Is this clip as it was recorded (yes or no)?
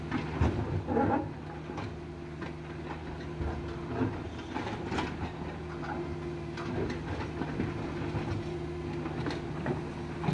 yes